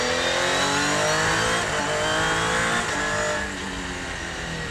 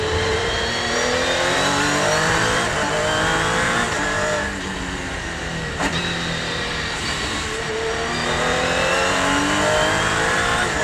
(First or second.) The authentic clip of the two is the first